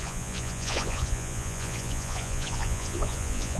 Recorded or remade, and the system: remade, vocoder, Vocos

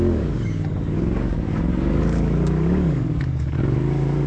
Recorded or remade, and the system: remade, codec, DAC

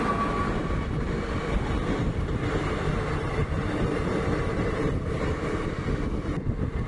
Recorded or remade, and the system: recorded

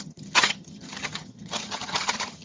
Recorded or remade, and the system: remade, vocoder, HiFi-GAN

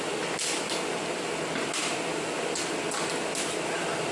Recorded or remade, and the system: recorded